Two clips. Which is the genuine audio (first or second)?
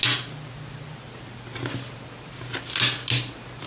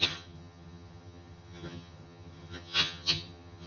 first